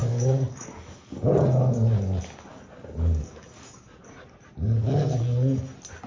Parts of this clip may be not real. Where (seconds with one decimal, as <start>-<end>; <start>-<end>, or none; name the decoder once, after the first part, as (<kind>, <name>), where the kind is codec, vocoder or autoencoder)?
0.0-1.3 (codec, DAC); 2.5-4.1